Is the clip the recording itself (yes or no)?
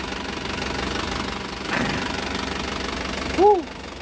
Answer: yes